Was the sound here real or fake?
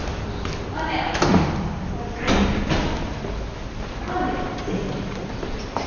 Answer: real